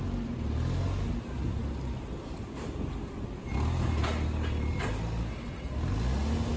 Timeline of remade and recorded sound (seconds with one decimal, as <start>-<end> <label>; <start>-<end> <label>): 0.0-6.6 recorded